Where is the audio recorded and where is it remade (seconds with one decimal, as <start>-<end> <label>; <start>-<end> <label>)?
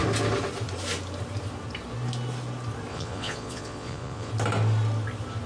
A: 0.0-2.9 recorded; 2.9-4.3 remade; 4.3-5.5 recorded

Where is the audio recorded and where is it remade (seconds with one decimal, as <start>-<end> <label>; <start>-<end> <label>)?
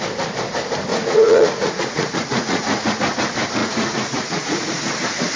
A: 0.0-0.9 recorded; 0.9-3.0 remade; 3.0-3.6 recorded; 3.6-4.8 remade; 4.8-5.4 recorded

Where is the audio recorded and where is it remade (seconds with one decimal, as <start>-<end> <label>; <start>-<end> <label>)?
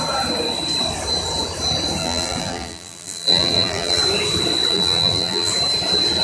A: 0.0-2.0 recorded; 2.0-4.0 remade; 4.0-4.7 recorded; 4.7-5.5 remade; 5.5-6.2 recorded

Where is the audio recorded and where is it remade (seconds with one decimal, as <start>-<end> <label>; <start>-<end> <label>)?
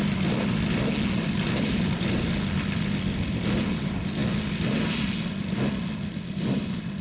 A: 0.0-7.0 recorded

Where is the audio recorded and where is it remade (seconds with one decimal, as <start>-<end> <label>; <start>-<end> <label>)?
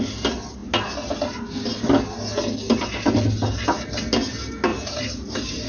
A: 0.0-4.7 recorded; 4.7-5.7 remade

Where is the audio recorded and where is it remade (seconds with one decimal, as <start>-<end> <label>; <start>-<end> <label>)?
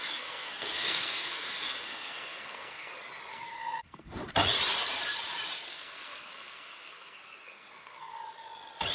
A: 0.0-2.9 remade; 2.9-3.3 recorded; 3.3-4.2 remade; 4.2-5.7 recorded; 5.7-8.1 remade; 8.1-8.9 recorded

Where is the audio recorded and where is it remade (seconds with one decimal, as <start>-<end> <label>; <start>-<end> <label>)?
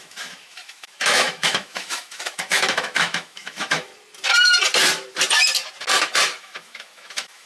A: 0.0-3.9 remade; 3.9-6.4 recorded; 6.4-7.5 remade